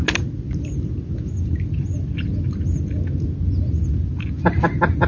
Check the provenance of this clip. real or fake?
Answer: real